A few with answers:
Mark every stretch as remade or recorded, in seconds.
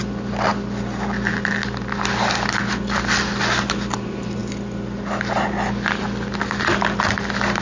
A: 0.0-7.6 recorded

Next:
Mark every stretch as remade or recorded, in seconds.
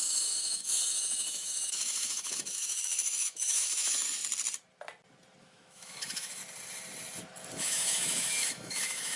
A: 0.0-4.2 remade; 4.2-5.4 recorded; 5.4-6.4 remade; 6.4-7.6 recorded; 7.6-9.2 remade